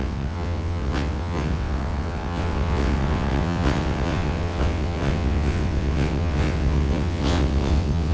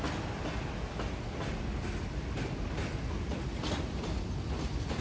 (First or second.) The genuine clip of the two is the second